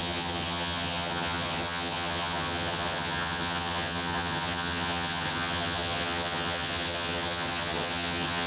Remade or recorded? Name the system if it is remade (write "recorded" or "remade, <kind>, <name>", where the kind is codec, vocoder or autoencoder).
remade, vocoder, HiFi-GAN